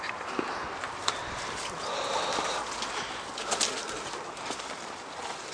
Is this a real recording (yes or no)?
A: yes